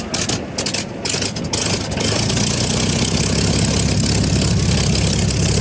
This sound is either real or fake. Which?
real